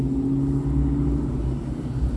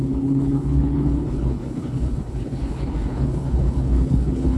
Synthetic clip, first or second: second